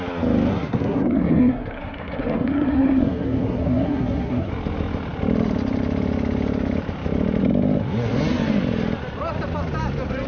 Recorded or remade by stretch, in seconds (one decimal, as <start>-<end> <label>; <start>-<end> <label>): 0.0-0.5 recorded; 0.5-4.5 remade; 4.5-10.3 recorded

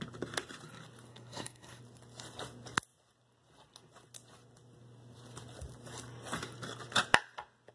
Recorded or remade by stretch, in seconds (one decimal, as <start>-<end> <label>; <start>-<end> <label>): 0.0-1.1 recorded; 1.1-1.8 remade; 1.8-7.7 recorded

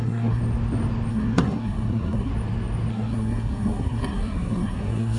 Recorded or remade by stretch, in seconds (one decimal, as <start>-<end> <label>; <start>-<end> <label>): 0.0-0.4 remade; 0.4-1.1 recorded; 1.1-2.3 remade; 2.3-2.9 recorded; 2.9-5.2 remade

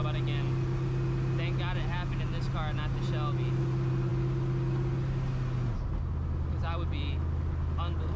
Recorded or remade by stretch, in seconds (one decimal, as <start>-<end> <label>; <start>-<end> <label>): 0.0-8.2 recorded

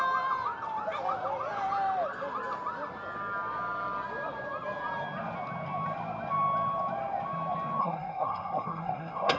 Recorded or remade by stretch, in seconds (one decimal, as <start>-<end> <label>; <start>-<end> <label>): 0.0-7.8 recorded; 7.8-9.4 remade

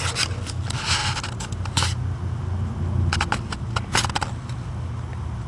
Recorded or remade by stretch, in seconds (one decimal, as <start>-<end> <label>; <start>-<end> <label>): 0.0-5.5 recorded

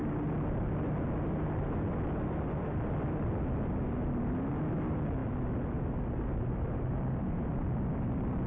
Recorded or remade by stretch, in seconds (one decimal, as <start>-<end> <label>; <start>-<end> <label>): 0.0-8.5 recorded